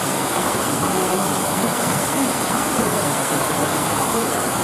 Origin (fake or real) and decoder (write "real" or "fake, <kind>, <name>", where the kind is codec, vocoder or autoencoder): fake, codec, SNAC